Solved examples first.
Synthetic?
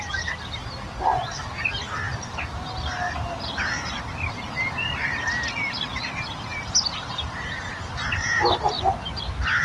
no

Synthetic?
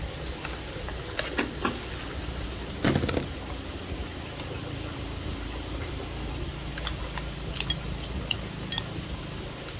no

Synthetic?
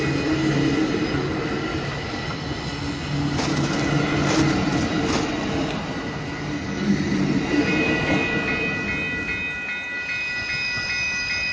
no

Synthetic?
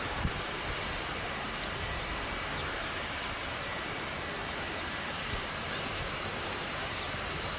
yes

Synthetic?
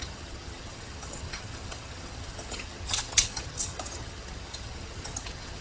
yes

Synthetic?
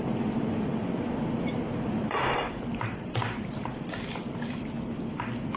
no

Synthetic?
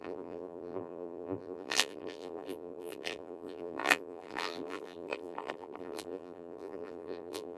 yes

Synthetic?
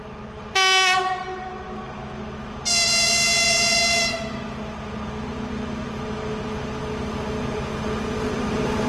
no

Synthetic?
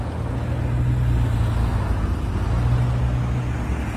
no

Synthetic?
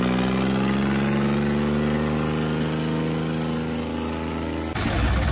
no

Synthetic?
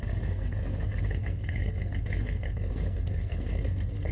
yes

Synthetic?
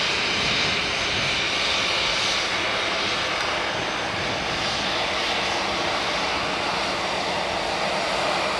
no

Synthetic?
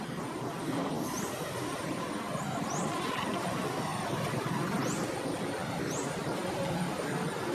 no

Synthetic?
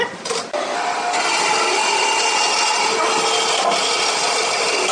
no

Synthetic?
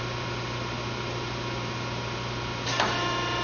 no